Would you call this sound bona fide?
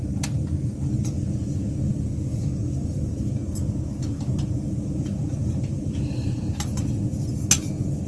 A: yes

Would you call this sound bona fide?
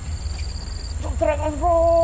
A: yes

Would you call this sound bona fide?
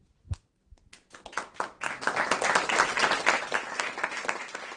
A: yes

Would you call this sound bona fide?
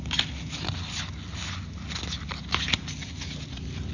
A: yes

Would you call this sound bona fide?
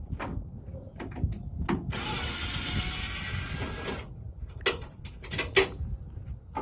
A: yes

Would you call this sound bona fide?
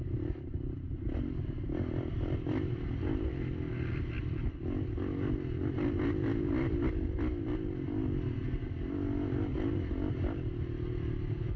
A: yes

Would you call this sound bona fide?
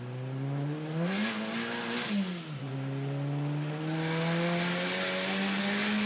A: yes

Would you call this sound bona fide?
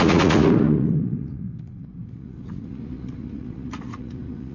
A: no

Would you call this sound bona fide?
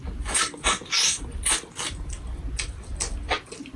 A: yes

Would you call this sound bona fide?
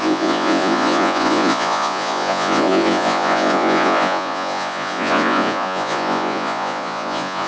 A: no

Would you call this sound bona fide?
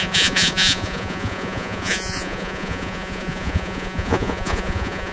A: no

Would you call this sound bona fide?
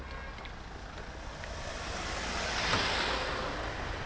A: yes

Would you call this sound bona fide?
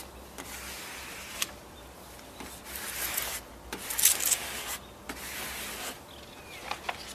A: yes